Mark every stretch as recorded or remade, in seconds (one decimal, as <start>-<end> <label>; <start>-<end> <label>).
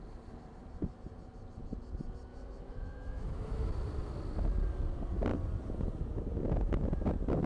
0.0-2.3 recorded; 2.3-3.7 remade; 3.7-7.5 recorded